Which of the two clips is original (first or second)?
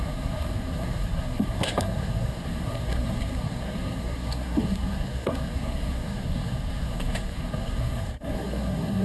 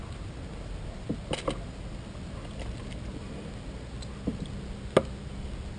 second